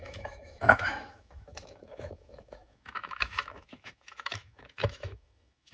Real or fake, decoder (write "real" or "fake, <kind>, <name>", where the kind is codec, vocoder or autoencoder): fake, autoencoder, DAC-VAE